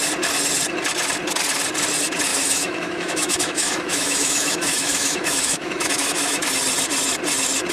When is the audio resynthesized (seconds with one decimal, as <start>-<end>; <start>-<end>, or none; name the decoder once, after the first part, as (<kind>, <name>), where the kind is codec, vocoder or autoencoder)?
2.3-6.5 (autoencoder, DAC-VAE)